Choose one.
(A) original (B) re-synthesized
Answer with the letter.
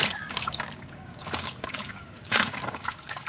B